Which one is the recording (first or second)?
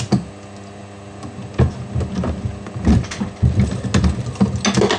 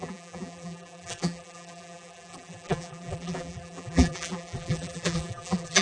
first